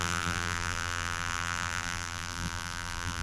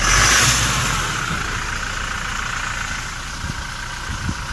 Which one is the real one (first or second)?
second